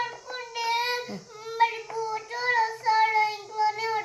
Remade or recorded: recorded